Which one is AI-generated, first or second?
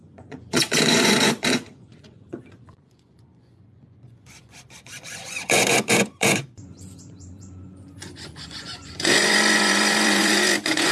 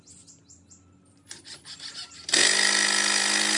first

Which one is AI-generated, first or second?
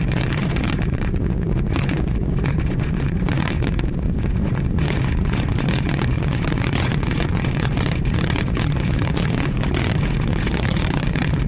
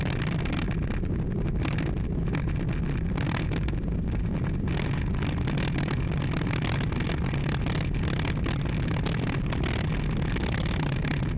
first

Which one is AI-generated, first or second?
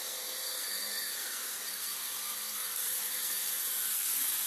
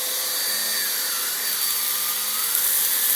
first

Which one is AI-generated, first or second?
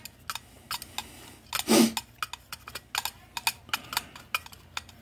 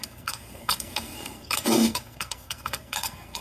second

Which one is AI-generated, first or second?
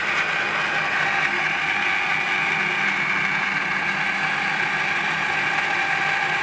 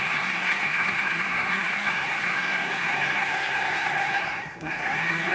second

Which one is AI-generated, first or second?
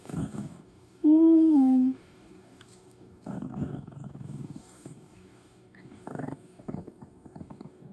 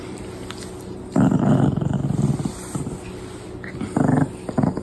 first